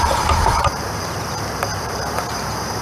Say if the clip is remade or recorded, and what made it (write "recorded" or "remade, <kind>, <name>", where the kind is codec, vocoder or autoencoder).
remade, vocoder, BigVGAN v2